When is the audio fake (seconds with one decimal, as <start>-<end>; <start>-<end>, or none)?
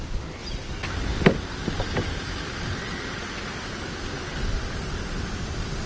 2.0-5.0